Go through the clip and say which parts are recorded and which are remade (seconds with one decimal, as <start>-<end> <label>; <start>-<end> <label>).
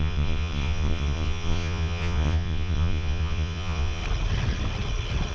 0.0-4.0 remade; 4.0-5.3 recorded